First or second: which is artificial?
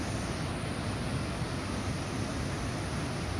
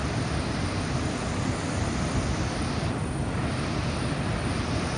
second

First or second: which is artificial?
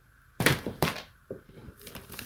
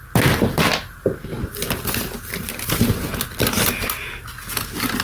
first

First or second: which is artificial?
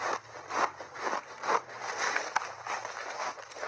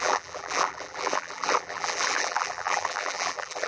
second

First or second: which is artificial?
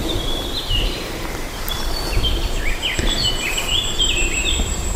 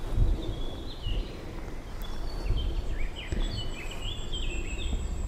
first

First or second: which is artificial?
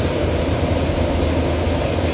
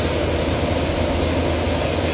first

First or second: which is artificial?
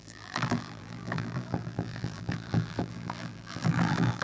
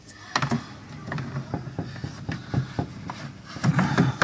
first